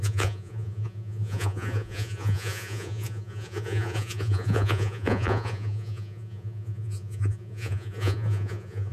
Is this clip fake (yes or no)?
yes